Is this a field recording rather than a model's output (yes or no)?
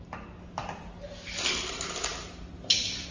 yes